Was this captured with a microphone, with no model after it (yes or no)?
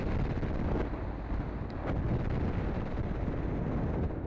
yes